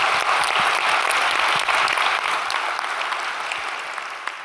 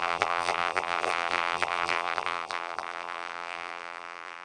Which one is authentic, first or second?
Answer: first